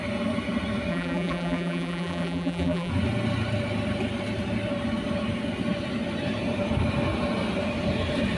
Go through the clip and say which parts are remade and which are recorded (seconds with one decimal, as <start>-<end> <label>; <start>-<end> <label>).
0.0-0.9 recorded; 0.9-2.9 remade; 2.9-8.4 recorded